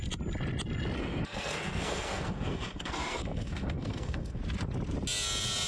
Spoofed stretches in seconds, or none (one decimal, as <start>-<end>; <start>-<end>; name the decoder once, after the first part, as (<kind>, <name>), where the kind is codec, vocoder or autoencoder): 1.0-4.4 (codec, SNAC)